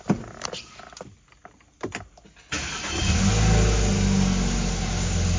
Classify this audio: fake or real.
real